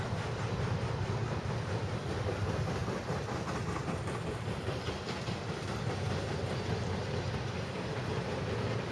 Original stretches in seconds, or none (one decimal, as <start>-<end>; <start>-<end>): 2.8-4.1